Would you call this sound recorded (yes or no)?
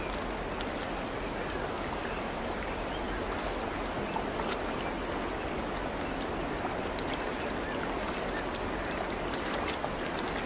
yes